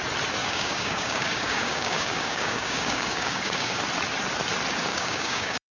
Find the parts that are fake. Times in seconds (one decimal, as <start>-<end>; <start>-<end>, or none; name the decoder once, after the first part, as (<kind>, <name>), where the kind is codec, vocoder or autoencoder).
0.4-3.8 (codec, DAC); 4.9-5.7